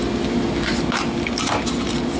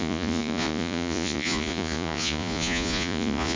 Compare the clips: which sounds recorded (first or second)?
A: first